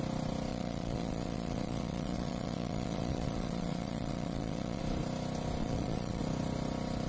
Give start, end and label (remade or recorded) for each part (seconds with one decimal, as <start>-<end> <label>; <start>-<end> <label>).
0.0-0.5 recorded; 0.5-4.8 remade; 4.8-5.6 recorded; 5.6-6.2 remade; 6.2-7.1 recorded